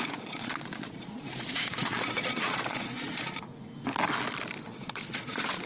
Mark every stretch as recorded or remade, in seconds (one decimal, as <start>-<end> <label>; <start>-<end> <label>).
0.0-3.5 remade; 3.5-4.6 recorded; 4.6-5.7 remade